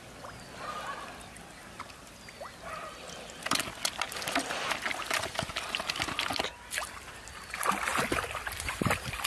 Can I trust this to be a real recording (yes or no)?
no